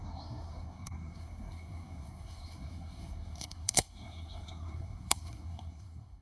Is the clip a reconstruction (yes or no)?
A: yes